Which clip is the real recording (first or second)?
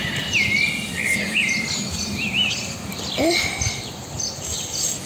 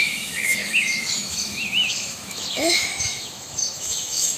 first